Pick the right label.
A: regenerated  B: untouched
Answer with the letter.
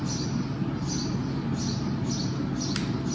B